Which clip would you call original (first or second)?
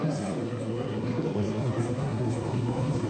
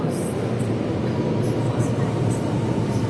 second